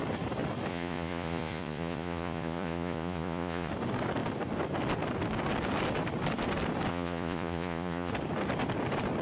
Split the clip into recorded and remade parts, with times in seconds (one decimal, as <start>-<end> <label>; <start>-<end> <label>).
0.0-0.7 recorded; 0.7-3.7 remade; 3.7-6.9 recorded; 6.9-8.1 remade; 8.1-9.2 recorded